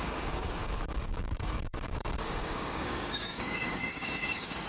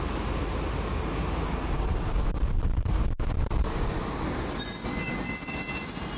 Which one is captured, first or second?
second